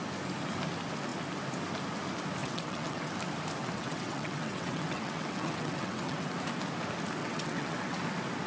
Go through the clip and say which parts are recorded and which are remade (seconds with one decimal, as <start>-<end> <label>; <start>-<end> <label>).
0.0-2.4 recorded; 2.4-3.1 remade; 3.1-3.6 recorded; 3.6-6.3 remade; 6.3-7.2 recorded; 7.2-8.0 remade; 8.0-8.5 recorded